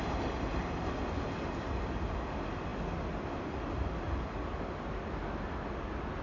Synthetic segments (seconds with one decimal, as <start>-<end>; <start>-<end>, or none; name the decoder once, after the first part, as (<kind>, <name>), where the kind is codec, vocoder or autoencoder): none